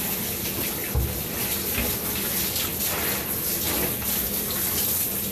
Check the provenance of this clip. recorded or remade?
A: recorded